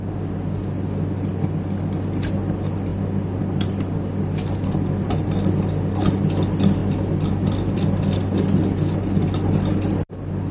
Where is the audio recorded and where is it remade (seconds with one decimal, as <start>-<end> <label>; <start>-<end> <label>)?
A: 0.0-10.5 recorded